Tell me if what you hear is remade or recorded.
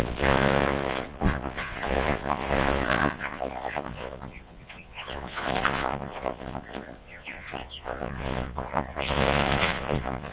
remade